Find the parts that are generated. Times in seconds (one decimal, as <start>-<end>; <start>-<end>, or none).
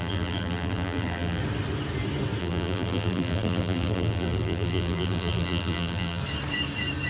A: 0.0-1.4; 2.4-6.2